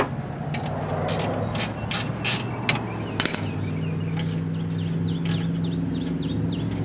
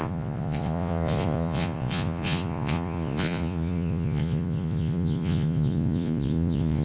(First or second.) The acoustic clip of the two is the first